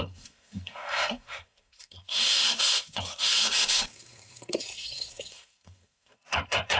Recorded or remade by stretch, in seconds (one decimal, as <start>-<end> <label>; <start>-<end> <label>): 0.0-6.8 remade